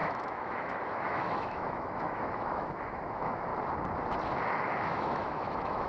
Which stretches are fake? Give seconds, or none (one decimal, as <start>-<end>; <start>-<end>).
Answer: 0.0-3.5; 4.8-5.9